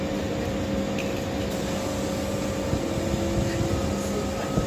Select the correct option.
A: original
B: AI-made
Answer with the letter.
A